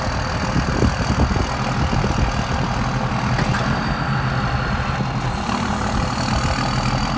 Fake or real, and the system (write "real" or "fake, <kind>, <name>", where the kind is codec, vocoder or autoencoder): real